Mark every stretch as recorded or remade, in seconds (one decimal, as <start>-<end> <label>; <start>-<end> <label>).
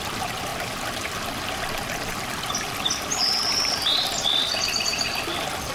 0.0-5.7 recorded